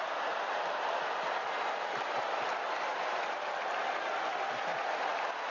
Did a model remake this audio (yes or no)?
no